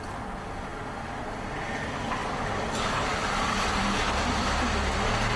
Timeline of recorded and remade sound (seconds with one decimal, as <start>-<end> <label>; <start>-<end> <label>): 0.0-5.4 recorded

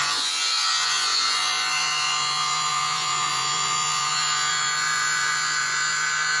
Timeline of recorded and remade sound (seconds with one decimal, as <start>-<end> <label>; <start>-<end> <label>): 0.0-6.4 remade

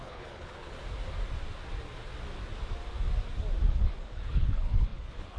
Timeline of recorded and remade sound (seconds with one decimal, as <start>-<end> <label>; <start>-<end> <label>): 0.0-0.8 remade; 0.8-3.6 recorded; 3.6-5.4 remade

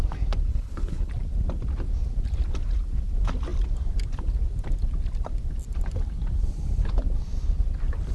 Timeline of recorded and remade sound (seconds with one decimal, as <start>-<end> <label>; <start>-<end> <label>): 0.0-0.5 recorded; 0.5-1.1 remade; 1.1-8.1 recorded

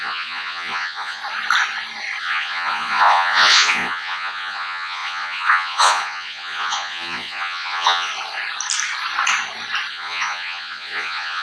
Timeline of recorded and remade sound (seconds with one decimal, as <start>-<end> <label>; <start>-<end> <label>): 0.0-1.2 remade; 1.2-2.2 recorded; 2.2-8.1 remade; 8.1-9.9 recorded; 9.9-11.4 remade